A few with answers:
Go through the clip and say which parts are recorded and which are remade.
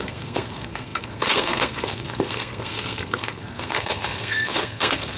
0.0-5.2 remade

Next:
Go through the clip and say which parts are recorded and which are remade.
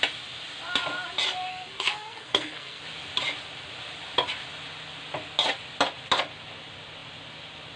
0.0-1.5 recorded; 1.5-2.8 remade; 2.8-7.8 recorded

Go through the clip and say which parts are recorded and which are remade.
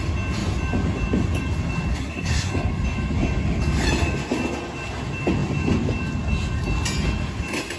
0.0-1.9 recorded; 1.9-2.5 remade; 2.5-7.8 recorded